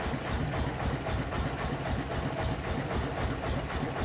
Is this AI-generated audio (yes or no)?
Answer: no